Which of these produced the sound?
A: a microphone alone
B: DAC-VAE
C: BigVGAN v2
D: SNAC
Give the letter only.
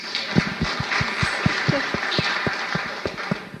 A